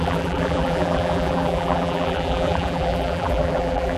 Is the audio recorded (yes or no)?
no